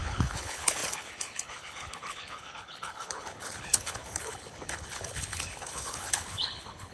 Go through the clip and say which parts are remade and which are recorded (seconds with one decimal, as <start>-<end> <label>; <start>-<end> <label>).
0.0-6.9 remade